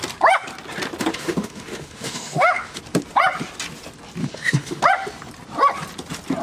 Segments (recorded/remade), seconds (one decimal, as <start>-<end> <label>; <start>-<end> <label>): 0.0-1.1 recorded; 1.1-2.8 remade; 2.8-4.2 recorded; 4.2-4.8 remade; 4.8-6.4 recorded

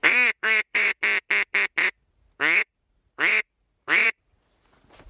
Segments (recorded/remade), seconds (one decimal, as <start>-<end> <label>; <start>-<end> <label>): 0.0-1.0 remade; 1.0-1.8 recorded; 1.8-5.1 remade

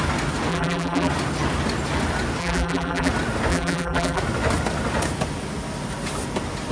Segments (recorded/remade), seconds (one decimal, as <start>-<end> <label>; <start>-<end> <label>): 0.0-0.5 recorded; 0.5-1.1 remade; 1.1-2.4 recorded; 2.4-3.1 remade; 3.1-3.5 recorded; 3.5-4.2 remade; 4.2-6.7 recorded

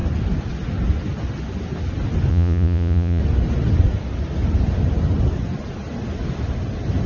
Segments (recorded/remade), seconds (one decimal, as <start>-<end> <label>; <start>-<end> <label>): 0.0-2.3 recorded; 2.3-3.2 remade; 3.2-7.1 recorded

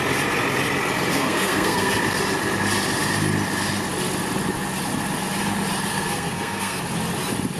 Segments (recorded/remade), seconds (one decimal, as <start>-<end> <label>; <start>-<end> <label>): 0.0-1.1 recorded; 1.1-2.0 remade; 2.0-5.9 recorded; 5.9-6.8 remade; 6.8-7.6 recorded